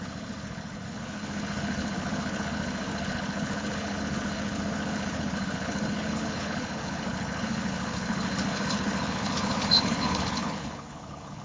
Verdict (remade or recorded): remade